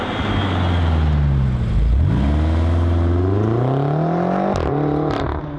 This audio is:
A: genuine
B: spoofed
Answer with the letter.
A